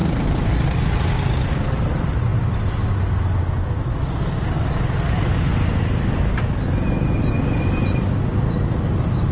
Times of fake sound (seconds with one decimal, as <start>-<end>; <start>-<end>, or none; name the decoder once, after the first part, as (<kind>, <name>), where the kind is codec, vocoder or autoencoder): 0.0-1.8 (vocoder, BigVGAN v2)